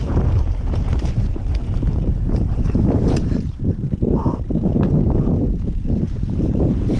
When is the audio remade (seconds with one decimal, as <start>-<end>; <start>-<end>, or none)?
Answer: 0.0-4.7; 5.6-7.0